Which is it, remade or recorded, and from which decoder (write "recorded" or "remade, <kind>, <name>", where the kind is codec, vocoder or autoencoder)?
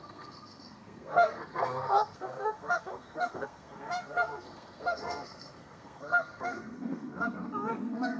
remade, codec, SNAC